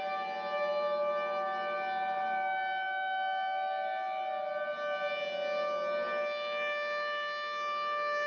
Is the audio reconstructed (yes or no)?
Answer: no